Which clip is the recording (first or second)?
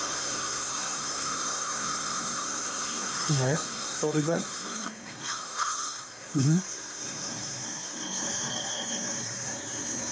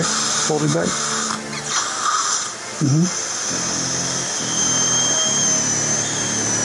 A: second